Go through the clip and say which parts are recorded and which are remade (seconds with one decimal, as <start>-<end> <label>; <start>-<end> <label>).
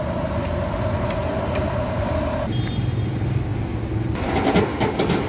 0.0-1.2 recorded; 1.2-2.2 remade; 2.2-5.3 recorded